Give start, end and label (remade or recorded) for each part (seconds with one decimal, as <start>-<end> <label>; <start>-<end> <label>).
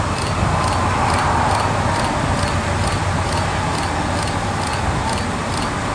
0.0-5.9 recorded